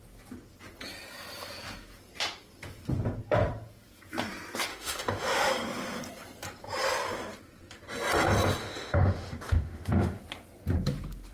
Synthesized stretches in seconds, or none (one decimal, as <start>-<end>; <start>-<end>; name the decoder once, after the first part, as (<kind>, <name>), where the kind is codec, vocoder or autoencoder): 4.7-5.5 (autoencoder, DAC-VAE); 8.6-10.2